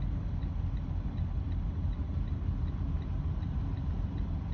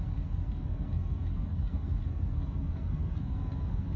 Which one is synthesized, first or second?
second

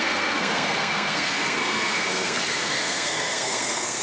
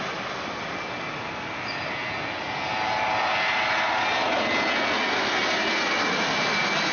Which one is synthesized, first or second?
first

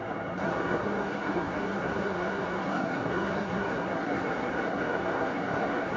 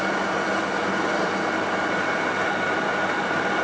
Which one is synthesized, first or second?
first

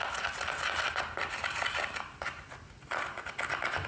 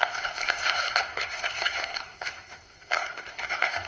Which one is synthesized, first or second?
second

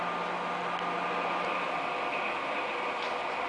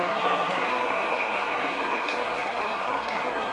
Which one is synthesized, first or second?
second